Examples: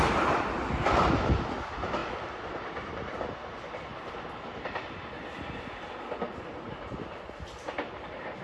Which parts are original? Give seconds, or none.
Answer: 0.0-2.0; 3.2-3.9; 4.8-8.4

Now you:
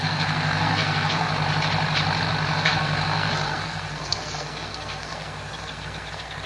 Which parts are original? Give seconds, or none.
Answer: 1.3-2.5

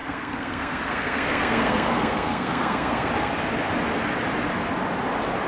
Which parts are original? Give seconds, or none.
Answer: 3.3-5.5

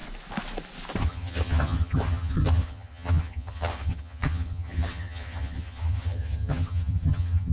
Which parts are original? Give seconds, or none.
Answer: 0.0-1.0